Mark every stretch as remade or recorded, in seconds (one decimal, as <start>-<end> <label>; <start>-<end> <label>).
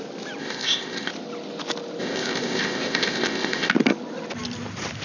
0.0-0.4 recorded; 0.4-1.1 remade; 1.1-2.0 recorded; 2.0-3.7 remade; 3.7-5.0 recorded